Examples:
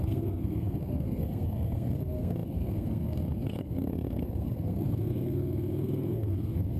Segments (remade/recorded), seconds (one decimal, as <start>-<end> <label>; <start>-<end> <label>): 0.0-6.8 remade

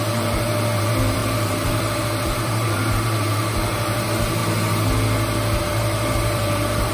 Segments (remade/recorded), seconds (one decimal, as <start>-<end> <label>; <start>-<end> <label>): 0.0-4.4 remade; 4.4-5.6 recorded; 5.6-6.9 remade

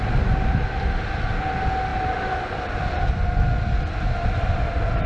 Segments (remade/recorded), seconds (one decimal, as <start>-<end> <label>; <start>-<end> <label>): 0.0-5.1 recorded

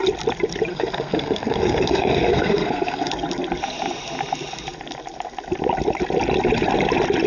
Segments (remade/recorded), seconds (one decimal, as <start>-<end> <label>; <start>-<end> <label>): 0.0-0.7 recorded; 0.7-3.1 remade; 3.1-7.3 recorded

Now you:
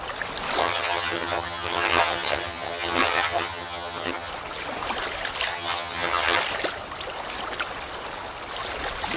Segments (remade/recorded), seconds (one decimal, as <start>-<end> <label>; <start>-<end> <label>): 0.0-0.6 recorded; 0.6-4.3 remade; 4.3-5.5 recorded; 5.5-6.4 remade; 6.4-9.2 recorded

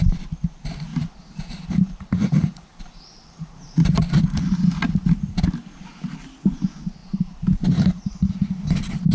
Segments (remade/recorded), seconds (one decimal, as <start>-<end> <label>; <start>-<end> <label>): 0.0-0.9 recorded; 0.9-4.0 remade; 4.0-7.0 recorded; 7.0-8.1 remade; 8.1-9.1 recorded